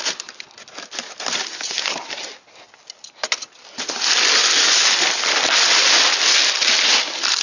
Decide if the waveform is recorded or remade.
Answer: recorded